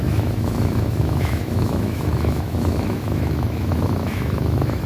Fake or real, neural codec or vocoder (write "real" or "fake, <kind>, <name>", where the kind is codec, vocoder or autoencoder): fake, autoencoder, DAC-VAE